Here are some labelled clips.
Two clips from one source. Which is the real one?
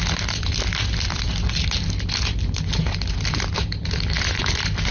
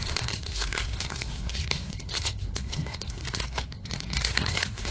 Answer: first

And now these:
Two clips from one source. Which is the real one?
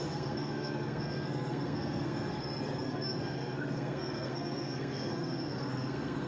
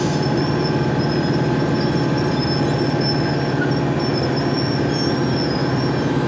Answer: second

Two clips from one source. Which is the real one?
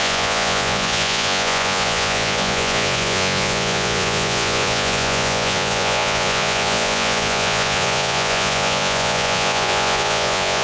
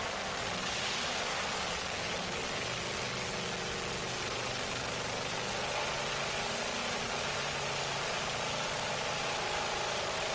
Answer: second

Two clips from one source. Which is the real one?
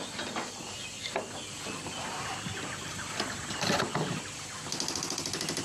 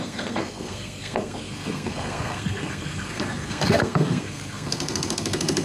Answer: first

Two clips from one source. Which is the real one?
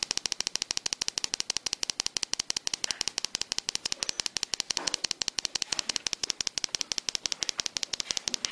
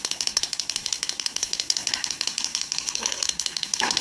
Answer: first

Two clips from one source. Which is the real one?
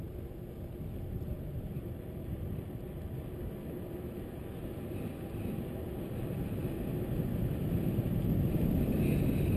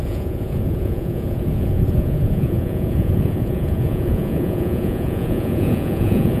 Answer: first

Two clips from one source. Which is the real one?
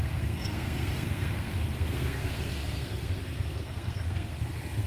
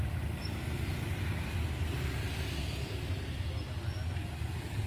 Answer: second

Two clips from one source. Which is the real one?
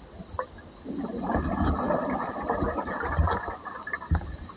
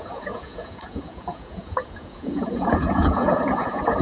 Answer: first